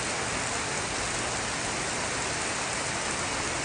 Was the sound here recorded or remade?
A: recorded